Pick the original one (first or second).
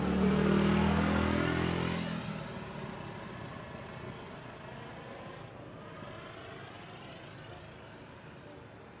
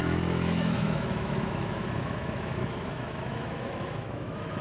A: first